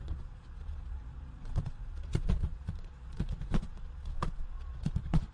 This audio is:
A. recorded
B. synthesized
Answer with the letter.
B